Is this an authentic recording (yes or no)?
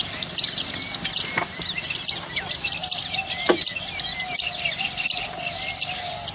yes